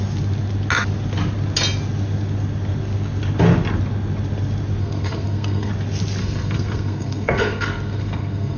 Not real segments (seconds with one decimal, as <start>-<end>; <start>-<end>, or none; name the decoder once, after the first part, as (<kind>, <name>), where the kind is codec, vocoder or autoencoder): 4.8-5.7 (codec, SNAC); 6.2-8.6